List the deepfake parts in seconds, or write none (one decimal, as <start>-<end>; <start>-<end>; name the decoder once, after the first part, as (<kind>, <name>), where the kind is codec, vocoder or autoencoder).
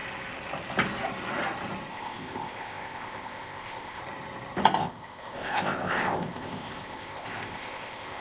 1.9-4.0 (codec, ZipCodec); 4.8-8.2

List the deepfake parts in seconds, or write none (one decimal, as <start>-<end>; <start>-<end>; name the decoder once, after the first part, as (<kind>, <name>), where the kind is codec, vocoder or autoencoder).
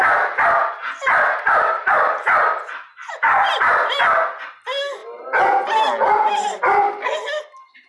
none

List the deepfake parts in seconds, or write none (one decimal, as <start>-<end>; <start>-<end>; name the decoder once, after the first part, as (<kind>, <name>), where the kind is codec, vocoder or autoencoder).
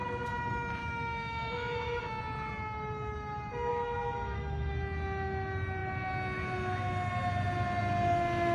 0.8-2.2 (autoencoder, DAC-VAE); 3.7-4.7